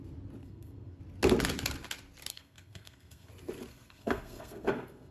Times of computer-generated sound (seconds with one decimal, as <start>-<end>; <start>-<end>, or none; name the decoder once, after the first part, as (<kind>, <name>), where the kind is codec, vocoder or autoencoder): 0.4-1.0 (codec, SNAC); 2.3-3.3; 3.7-5.1